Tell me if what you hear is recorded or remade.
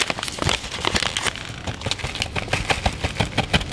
recorded